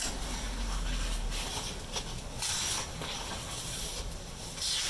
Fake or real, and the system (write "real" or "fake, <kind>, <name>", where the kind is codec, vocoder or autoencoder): real